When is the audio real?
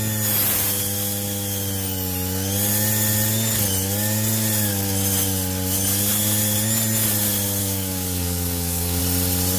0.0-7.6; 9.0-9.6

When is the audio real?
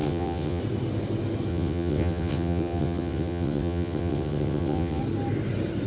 0.6-1.5; 5.0-5.9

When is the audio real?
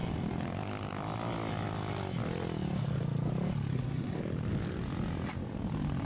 0.0-3.7; 4.2-6.0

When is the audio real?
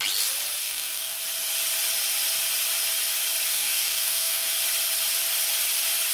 0.0-0.6; 1.2-3.5; 4.5-6.1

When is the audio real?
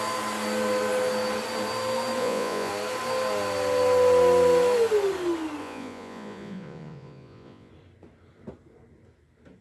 0.0-2.2; 2.7-5.6; 7.7-9.6